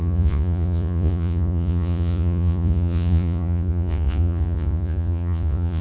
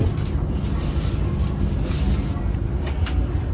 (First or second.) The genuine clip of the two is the second